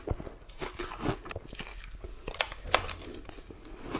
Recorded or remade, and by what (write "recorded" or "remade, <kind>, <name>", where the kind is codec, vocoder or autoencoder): recorded